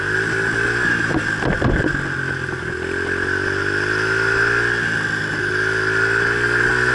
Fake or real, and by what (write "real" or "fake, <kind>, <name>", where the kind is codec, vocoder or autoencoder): real